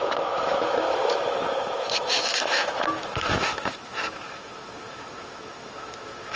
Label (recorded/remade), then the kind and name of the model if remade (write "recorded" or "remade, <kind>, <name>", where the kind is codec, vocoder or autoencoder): remade, autoencoder, DAC-VAE